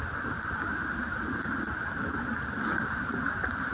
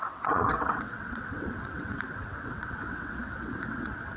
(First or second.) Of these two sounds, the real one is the first